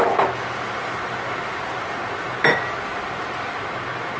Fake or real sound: real